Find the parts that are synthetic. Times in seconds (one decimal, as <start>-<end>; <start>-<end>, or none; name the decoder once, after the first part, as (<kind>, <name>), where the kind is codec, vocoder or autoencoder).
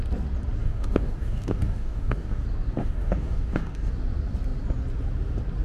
0.6-2.4 (codec, DAC); 2.8-3.9